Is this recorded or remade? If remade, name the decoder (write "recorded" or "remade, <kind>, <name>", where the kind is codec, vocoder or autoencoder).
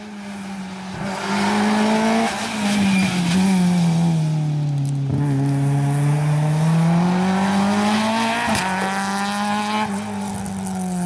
recorded